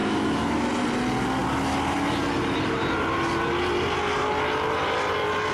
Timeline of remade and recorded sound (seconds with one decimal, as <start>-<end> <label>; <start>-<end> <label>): 0.0-0.7 remade; 0.7-5.5 recorded